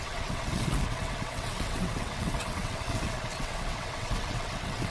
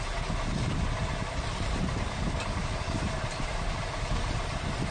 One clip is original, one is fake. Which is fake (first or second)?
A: first